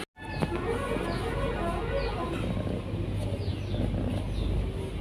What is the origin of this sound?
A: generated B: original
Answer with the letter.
B